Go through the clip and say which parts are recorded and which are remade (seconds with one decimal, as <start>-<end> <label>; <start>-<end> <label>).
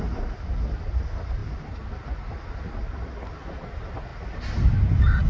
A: 0.0-5.3 recorded